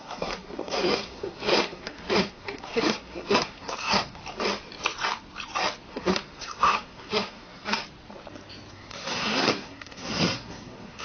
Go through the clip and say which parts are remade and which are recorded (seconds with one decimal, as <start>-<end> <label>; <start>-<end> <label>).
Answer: 0.0-4.2 remade; 4.2-5.9 recorded; 5.9-7.8 remade; 7.8-8.7 recorded; 8.7-11.0 remade